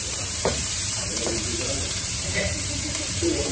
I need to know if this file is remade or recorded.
remade